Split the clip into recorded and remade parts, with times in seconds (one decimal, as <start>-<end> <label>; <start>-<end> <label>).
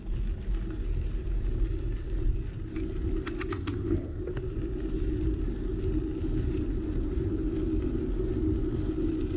0.0-3.5 recorded; 3.5-4.2 remade; 4.2-9.4 recorded